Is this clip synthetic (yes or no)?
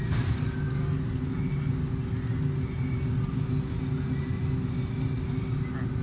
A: no